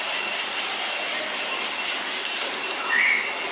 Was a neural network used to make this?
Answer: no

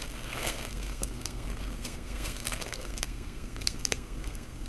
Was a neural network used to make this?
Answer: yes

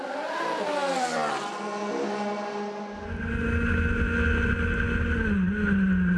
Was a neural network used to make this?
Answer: no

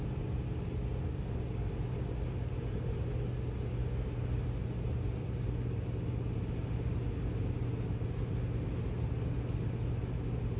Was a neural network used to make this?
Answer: no